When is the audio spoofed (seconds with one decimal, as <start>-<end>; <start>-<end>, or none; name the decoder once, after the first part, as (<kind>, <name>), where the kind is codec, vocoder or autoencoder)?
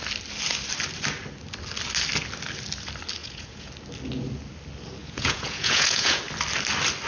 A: 3.2-3.7 (vocoder, Vocos); 5.0-6.2